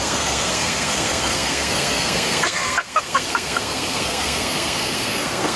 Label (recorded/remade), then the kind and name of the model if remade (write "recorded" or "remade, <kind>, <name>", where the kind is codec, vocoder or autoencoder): remade, codec, SNAC